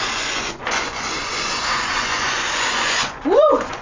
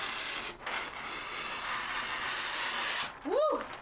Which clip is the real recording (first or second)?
second